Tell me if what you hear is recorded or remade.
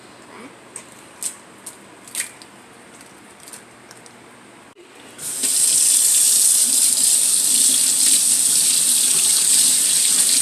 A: recorded